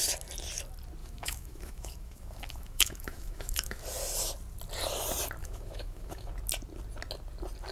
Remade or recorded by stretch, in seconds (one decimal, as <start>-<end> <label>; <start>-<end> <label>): 0.0-1.0 recorded; 1.0-3.8 remade; 3.8-5.4 recorded; 5.4-6.3 remade; 6.3-7.7 recorded